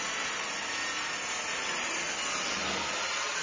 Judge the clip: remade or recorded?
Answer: recorded